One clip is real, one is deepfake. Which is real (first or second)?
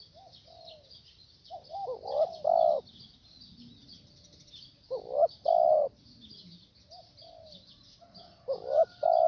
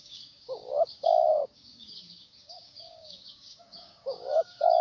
first